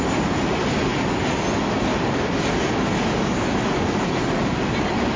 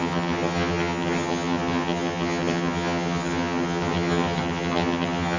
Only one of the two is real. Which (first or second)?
first